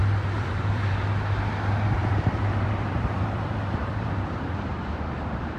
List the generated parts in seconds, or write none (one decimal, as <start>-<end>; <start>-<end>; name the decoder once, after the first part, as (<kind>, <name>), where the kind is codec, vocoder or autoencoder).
0.0-0.9 (vocoder, BigVGAN v2); 2.0-4.7